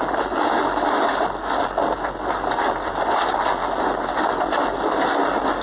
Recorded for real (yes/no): yes